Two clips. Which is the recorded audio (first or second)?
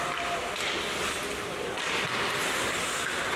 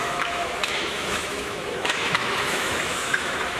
first